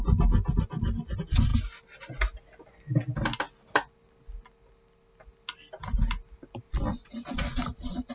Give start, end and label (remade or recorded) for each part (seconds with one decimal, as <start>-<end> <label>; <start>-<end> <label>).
0.0-7.0 recorded; 7.0-8.1 remade